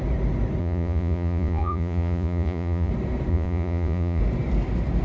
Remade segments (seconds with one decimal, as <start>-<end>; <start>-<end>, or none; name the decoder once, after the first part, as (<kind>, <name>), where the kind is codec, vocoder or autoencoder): 0.6-2.9 (vocoder, Vocos); 3.3-4.2